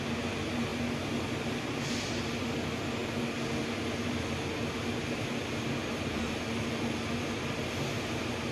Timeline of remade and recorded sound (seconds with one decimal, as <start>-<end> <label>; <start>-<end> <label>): 0.0-8.5 recorded